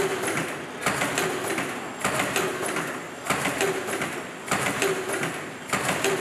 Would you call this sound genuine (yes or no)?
yes